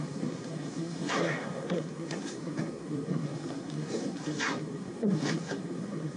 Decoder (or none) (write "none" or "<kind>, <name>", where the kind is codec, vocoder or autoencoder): codec, SNAC